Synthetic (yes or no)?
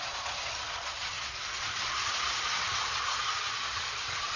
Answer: yes